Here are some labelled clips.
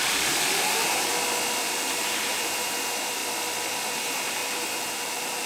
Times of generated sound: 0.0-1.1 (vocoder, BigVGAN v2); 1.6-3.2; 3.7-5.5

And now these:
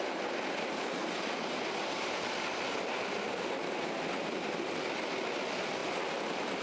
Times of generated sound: 5.8-6.6 (vocoder, BigVGAN v2)

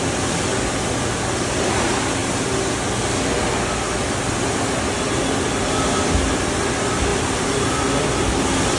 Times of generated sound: 7.1-8.0 (vocoder, BigVGAN v2)